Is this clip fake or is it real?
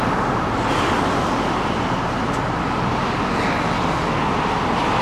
real